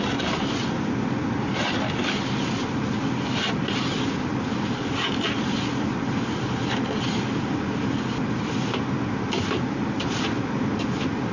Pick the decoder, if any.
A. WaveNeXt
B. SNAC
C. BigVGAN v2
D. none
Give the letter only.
D